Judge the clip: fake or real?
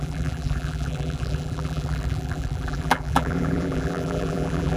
fake